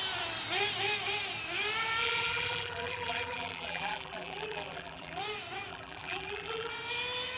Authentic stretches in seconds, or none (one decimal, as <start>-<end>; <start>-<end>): 0.0-2.0; 5.2-5.7; 6.7-7.4